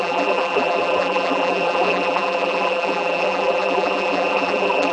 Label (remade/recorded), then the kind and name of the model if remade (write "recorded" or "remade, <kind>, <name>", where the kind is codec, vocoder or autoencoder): remade, vocoder, BigVGAN v2